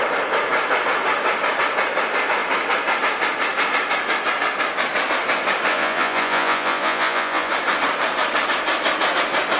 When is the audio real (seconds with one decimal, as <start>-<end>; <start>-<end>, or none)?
0.0-5.7; 7.5-9.6